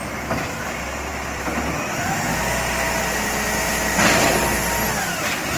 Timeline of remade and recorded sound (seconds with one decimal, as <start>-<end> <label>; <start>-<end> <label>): 0.0-5.6 recorded